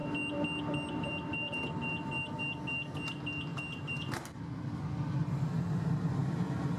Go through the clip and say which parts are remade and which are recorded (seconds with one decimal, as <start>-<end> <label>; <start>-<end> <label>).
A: 0.0-2.4 remade; 2.4-3.5 recorded; 3.5-4.8 remade; 4.8-6.2 recorded; 6.2-6.8 remade